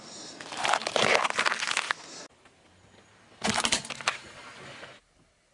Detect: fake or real real